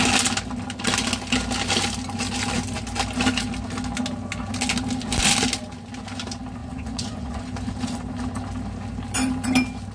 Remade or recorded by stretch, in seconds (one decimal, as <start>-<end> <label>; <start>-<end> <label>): 0.0-6.6 recorded; 6.6-7.4 remade; 7.4-9.9 recorded